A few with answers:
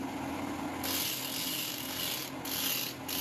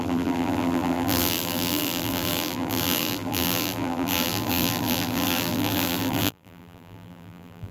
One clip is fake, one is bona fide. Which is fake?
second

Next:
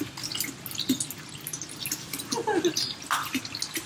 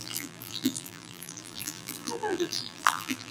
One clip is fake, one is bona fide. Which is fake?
second